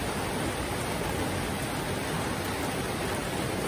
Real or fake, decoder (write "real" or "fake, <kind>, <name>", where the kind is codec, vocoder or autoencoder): real